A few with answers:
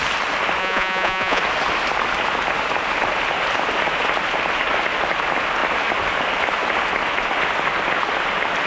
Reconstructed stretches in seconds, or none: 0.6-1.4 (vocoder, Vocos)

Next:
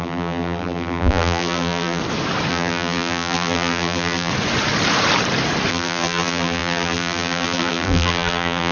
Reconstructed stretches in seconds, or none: 0.0-2.0 (vocoder, BigVGAN v2); 2.5-4.3; 5.7-8.7

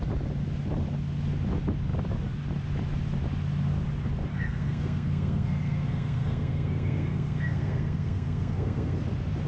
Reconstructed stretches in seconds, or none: 4.3-9.0 (codec, SNAC)

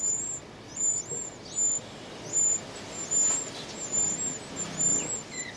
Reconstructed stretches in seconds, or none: none

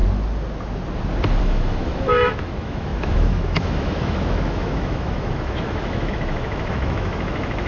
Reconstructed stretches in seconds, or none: 1.4-7.7 (autoencoder, DAC-VAE)

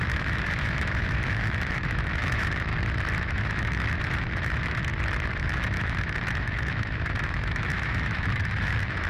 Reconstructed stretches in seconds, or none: 0.0-2.7 (autoencoder, DAC-VAE); 3.2-4.9; 5.4-9.1

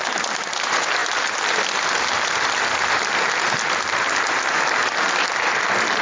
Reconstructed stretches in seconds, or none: none

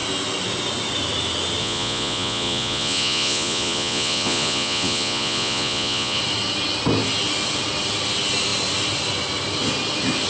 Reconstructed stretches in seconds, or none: 1.6-6.2 (vocoder, Vocos)